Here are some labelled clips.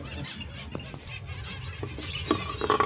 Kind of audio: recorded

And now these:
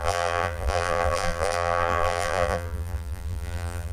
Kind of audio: remade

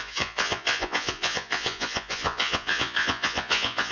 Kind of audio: remade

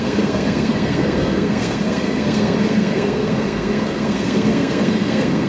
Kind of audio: remade